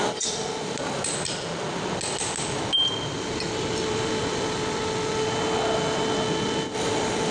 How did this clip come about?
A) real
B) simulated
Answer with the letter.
A